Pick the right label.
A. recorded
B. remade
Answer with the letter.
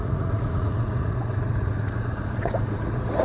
B